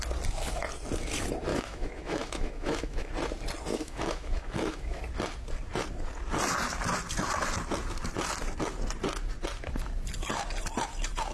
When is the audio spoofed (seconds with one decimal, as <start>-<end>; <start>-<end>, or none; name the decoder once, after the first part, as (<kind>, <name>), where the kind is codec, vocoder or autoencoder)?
1.5-3.1 (autoencoder, DAC-VAE); 3.7-5.0